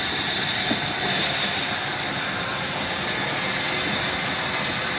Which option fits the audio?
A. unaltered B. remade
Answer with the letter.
A